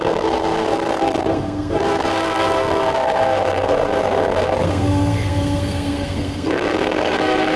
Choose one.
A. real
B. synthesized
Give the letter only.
B